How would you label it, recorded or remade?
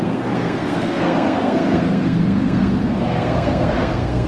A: remade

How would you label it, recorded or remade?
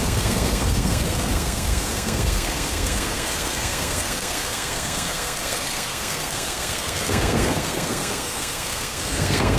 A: remade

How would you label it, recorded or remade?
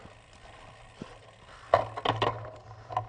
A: recorded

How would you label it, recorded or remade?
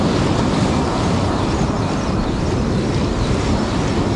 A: recorded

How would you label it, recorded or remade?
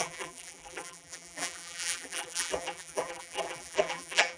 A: remade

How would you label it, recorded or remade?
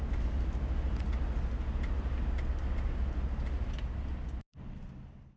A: recorded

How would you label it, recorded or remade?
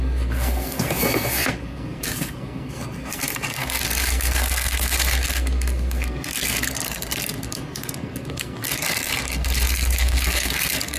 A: remade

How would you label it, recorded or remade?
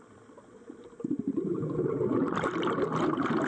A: recorded